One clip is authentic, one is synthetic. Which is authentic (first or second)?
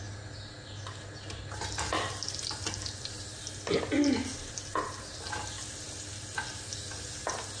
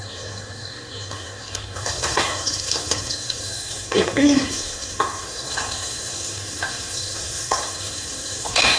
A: first